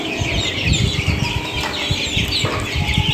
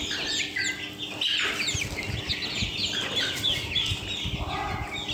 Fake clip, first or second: first